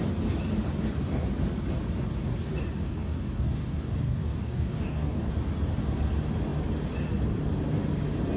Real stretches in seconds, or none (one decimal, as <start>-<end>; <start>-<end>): 0.0-2.8; 5.3-8.4